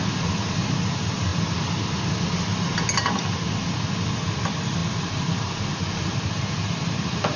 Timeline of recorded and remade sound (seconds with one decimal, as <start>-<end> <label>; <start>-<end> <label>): 0.0-7.4 recorded